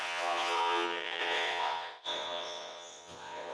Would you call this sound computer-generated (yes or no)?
yes